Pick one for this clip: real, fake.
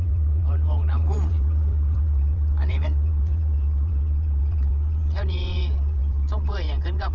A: fake